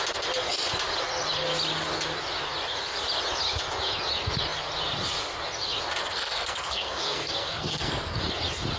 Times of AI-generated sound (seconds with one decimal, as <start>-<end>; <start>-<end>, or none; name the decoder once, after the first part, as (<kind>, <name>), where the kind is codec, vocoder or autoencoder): 6.0-8.2 (codec, SNAC)

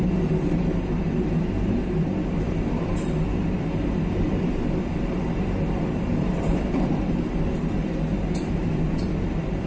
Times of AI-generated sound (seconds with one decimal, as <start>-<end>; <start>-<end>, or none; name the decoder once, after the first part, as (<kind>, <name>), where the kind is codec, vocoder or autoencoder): 0.0-7.8 (vocoder, BigVGAN v2); 8.5-9.7

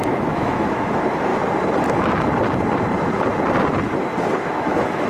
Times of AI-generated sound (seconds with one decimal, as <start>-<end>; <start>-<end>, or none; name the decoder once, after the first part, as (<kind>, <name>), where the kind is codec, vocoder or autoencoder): 0.0-1.3 (autoencoder, DAC-VAE); 4.4-5.1

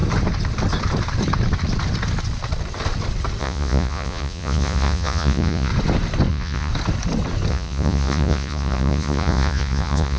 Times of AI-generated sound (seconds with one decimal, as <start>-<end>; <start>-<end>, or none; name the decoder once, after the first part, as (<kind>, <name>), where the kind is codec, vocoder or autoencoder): 3.4-5.7 (vocoder, Vocos); 6.3-6.7; 7.5-10.2

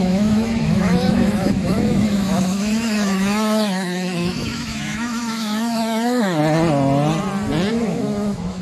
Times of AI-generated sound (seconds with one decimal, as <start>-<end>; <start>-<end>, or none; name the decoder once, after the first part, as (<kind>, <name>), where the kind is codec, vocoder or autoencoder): 0.0-6.4 (autoencoder, DAC-VAE); 7.7-8.6

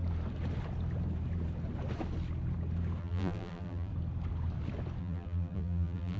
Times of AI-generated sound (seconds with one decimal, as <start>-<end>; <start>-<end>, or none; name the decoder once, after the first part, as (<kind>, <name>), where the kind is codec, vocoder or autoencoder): 3.0-3.9 (vocoder, BigVGAN v2); 5.0-6.2

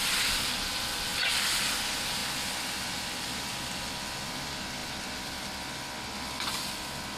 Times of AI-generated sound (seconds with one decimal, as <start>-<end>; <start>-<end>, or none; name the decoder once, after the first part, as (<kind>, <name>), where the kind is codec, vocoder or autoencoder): none